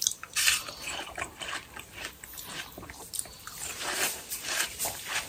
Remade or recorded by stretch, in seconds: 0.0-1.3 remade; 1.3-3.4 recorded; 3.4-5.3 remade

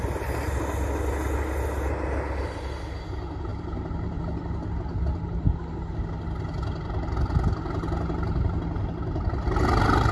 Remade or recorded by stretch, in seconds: 0.0-3.5 recorded; 3.5-4.2 remade; 4.2-10.1 recorded

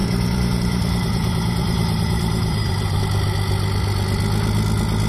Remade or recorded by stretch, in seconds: 0.0-3.0 remade; 3.0-5.1 recorded

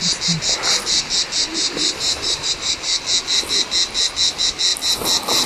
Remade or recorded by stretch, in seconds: 0.0-1.5 recorded; 1.5-2.7 remade; 2.7-5.5 recorded

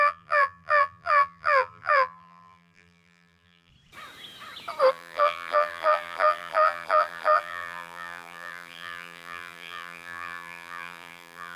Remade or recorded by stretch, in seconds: 0.0-3.7 remade; 3.7-4.9 recorded; 4.9-11.6 remade

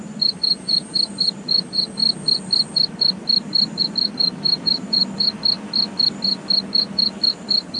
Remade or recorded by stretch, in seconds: 0.0-2.0 remade; 2.0-3.8 recorded; 3.8-5.0 remade; 5.0-7.3 recorded; 7.3-7.8 remade